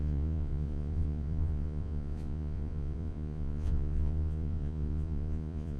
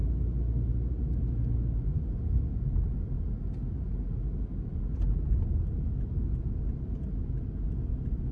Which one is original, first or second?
second